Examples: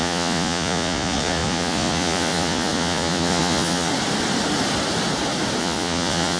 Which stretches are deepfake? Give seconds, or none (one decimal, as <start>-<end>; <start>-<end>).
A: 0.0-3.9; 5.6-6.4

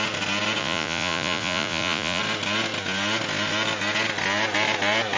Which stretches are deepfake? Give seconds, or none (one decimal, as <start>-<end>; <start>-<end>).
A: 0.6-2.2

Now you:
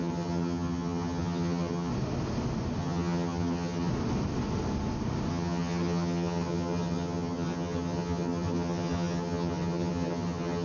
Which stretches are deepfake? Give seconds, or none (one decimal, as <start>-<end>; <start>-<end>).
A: 0.0-1.9; 2.8-3.9; 5.3-10.6